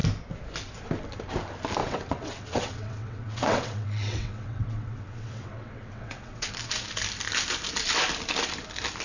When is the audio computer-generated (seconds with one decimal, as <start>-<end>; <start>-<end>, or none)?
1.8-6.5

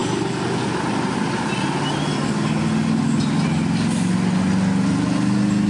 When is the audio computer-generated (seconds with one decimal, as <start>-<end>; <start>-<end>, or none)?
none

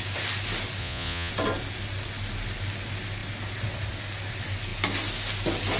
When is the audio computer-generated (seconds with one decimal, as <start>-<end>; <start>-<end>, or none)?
0.8-1.3

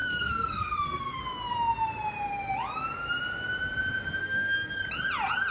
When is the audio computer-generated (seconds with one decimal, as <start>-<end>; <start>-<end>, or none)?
0.0-1.2; 4.2-4.7